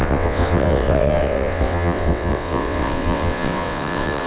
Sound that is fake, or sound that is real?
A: fake